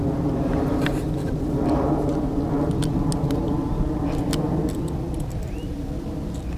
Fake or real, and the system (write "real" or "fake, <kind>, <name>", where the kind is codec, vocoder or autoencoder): real